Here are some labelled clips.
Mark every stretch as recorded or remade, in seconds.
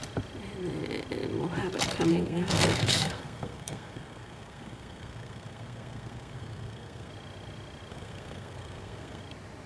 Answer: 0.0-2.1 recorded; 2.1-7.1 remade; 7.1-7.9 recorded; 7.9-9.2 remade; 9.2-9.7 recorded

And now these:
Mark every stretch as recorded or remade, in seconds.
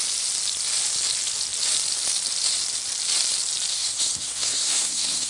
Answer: 0.0-3.7 recorded; 3.7-5.3 remade